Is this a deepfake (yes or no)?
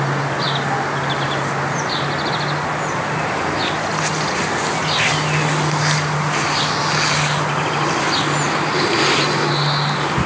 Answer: no